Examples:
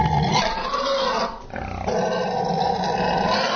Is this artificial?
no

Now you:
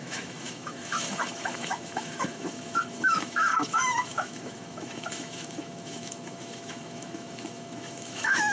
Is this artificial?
yes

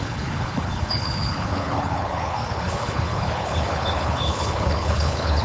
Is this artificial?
yes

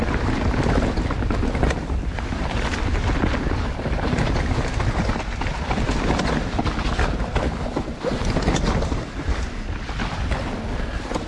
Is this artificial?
no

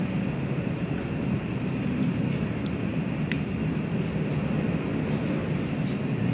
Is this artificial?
yes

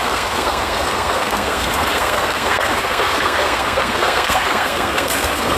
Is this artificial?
yes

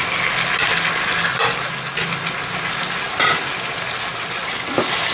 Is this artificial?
no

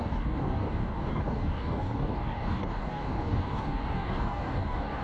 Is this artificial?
yes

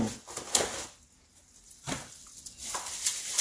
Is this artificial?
no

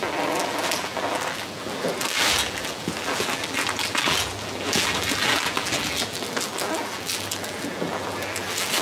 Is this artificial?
yes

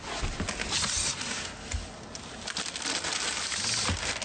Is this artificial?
no